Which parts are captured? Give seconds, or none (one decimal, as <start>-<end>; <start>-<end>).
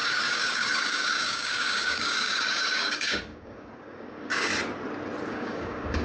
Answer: 4.5-5.3